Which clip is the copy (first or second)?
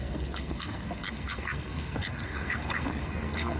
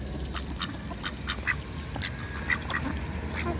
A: first